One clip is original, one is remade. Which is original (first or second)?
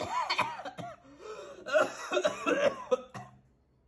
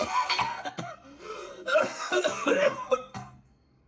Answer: first